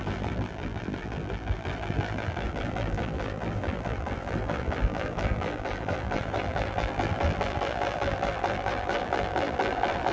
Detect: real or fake fake